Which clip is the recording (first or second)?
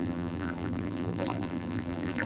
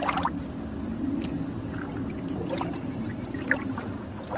second